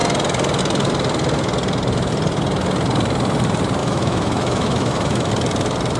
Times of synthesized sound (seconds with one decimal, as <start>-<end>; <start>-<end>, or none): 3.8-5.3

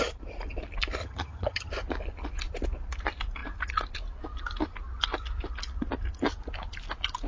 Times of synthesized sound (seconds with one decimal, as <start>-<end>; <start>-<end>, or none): 1.0-1.7

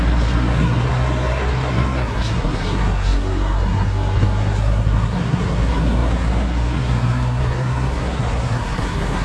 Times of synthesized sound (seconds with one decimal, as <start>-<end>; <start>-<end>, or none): 0.0-9.2